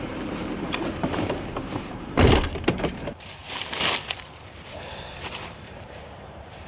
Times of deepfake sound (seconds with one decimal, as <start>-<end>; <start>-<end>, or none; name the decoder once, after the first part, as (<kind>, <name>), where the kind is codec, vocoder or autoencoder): 0.0-3.4 (vocoder, BigVGAN v2); 4.2-6.7